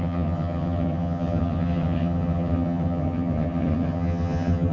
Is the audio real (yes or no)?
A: no